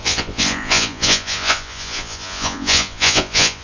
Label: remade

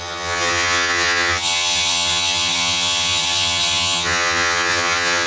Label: remade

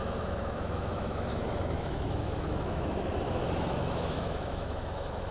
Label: remade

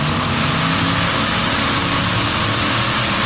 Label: recorded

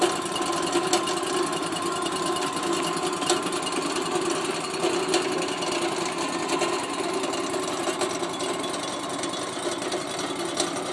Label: recorded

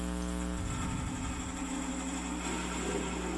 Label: recorded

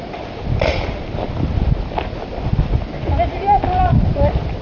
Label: recorded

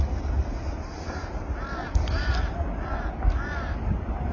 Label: recorded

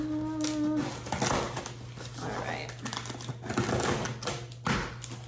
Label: recorded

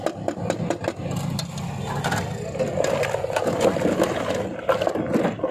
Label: recorded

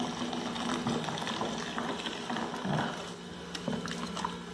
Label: recorded